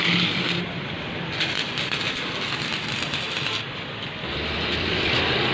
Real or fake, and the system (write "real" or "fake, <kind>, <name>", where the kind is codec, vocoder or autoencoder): real